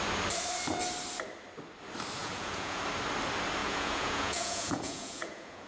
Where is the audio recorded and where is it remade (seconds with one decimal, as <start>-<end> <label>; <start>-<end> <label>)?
0.0-2.2 recorded; 2.2-2.8 remade; 2.8-3.6 recorded; 3.6-5.7 remade